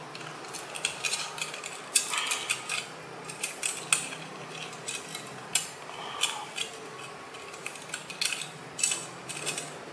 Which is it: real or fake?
real